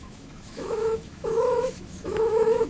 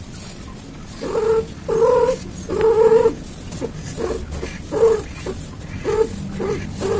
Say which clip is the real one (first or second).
second